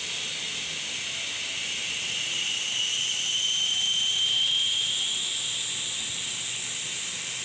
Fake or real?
real